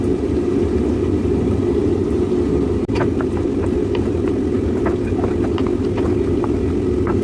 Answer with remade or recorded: recorded